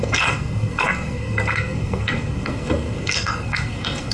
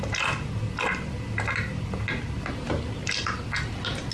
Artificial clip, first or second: first